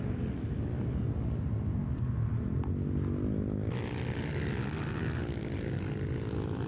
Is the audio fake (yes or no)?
no